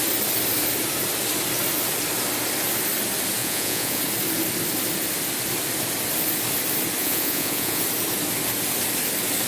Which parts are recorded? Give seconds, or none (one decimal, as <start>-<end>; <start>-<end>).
0.0-3.4; 4.0-7.0; 7.8-9.5